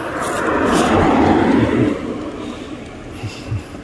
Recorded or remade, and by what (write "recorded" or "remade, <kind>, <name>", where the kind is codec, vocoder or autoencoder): recorded